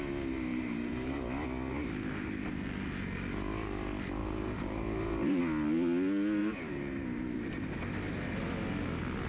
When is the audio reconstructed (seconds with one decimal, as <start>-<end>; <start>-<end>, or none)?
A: 0.5-1.1; 4.2-5.4; 6.4-7.5